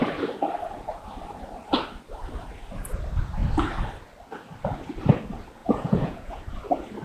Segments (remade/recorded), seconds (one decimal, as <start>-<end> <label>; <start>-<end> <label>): 0.0-5.6 recorded; 5.6-6.4 remade; 6.4-7.0 recorded